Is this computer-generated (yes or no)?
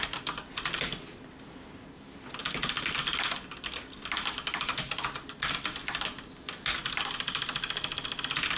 no